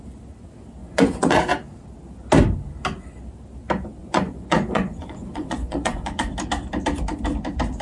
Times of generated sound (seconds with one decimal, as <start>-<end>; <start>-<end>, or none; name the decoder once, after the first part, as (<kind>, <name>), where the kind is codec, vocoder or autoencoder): 0.8-1.4 (vocoder, Vocos); 4.0-6.3